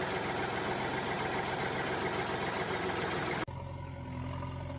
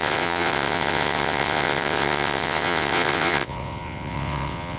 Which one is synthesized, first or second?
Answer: second